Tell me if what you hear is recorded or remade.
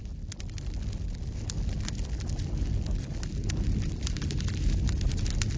recorded